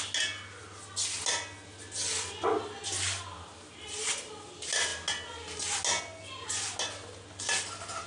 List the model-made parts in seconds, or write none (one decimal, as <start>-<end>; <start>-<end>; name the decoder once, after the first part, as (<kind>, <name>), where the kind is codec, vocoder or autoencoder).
none